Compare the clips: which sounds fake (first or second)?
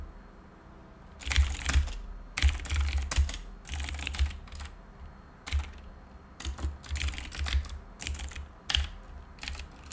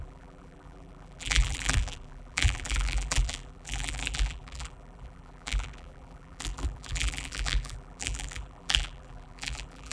second